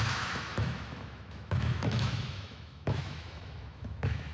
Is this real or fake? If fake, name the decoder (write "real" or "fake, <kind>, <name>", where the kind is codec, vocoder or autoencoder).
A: fake, autoencoder, DAC-VAE